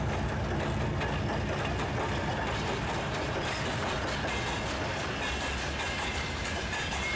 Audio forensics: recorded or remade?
recorded